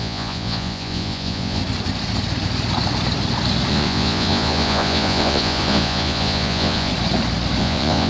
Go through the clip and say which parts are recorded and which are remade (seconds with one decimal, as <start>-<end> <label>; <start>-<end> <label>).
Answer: 0.0-1.6 remade; 1.6-3.7 recorded; 3.7-6.9 remade; 6.9-7.6 recorded; 7.6-8.1 remade